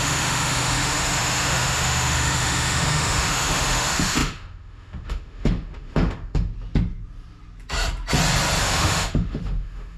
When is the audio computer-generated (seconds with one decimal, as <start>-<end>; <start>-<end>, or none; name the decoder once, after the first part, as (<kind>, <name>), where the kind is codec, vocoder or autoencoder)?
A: 0.0-6.5 (autoencoder, DAC-VAE); 8.6-10.0

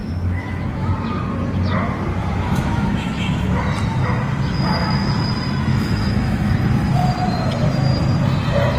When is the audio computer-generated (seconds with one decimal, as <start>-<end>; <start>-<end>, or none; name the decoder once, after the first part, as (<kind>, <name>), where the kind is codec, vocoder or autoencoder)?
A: 0.0-0.9 (autoencoder, DAC-VAE); 2.2-3.6; 5.7-6.5

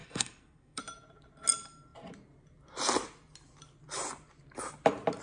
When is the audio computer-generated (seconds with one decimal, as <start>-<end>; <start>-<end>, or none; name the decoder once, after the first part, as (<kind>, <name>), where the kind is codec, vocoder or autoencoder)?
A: 0.0-0.8 (codec, SNAC)

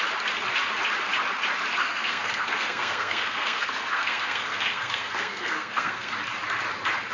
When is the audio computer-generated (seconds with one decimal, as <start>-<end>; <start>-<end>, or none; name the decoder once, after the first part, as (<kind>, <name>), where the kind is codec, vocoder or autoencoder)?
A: 1.8-6.1 (codec, SNAC)

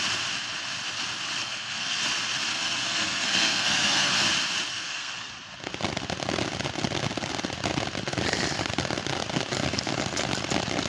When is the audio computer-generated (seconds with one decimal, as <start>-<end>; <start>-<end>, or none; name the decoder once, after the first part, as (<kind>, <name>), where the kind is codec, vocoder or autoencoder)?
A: 1.4-2.0 (codec, SNAC); 2.5-4.1; 4.7-5.3

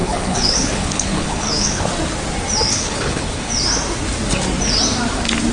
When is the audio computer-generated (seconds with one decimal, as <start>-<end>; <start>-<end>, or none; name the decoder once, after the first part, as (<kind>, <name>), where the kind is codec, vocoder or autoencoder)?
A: 0.0-1.8 (codec, HILCodec); 2.7-3.5

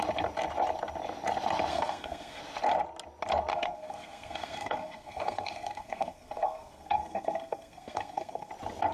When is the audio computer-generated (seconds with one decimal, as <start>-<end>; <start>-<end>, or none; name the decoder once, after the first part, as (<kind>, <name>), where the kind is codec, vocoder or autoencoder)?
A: 1.7-2.4 (codec, SNAC); 3.5-8.5

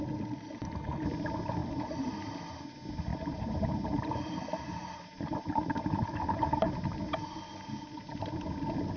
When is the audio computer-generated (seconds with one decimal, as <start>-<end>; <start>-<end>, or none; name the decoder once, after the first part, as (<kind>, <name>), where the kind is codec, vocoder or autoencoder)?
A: 1.6-2.1 (vocoder, BigVGAN v2); 3.1-6.4